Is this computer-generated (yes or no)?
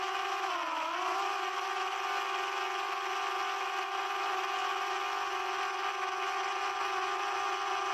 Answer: no